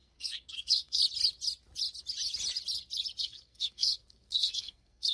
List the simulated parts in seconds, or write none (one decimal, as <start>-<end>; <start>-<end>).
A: 0.0-1.0; 3.2-5.1

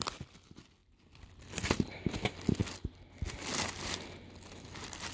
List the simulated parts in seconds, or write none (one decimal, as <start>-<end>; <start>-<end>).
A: none

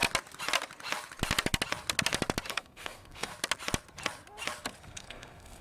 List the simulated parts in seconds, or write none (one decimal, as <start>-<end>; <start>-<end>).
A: 2.5-3.3; 4.8-5.6

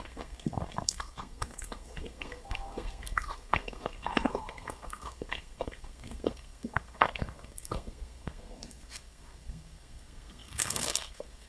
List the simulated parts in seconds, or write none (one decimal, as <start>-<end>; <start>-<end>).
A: 0.0-11.5

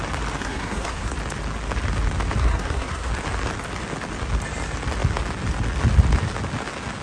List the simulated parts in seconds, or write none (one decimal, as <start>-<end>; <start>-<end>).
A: 0.4-1.1; 2.4-3.1

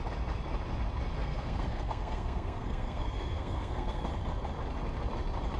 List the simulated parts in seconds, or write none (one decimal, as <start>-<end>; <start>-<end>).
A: 1.2-4.1